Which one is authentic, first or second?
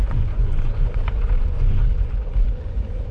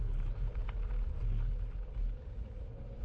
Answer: second